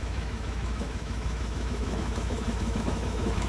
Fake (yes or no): yes